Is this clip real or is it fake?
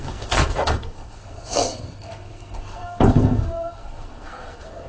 fake